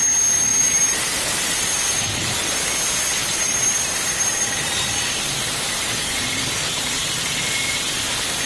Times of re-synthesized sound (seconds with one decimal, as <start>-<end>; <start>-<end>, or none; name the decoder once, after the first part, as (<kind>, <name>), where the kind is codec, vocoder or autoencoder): 0.6-2.7 (vocoder, BigVGAN v2); 3.2-7.5